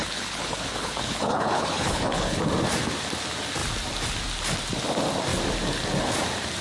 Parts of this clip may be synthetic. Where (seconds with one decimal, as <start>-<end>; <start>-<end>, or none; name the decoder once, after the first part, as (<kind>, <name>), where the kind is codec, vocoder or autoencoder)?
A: 0.0-2.4 (codec, HILCodec)